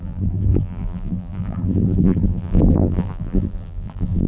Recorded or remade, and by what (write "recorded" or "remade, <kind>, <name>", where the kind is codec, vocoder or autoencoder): remade, vocoder, BigVGAN v2